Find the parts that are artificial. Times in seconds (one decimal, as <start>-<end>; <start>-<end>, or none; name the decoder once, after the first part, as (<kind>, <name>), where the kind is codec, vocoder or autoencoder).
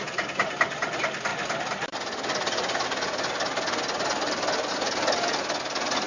none